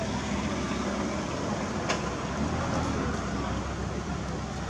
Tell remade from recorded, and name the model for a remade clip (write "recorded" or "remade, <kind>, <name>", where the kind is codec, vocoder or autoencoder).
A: recorded